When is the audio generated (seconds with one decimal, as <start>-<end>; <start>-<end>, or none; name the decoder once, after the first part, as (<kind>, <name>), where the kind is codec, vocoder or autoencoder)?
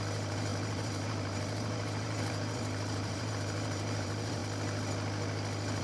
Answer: 0.0-4.4 (vocoder, BigVGAN v2)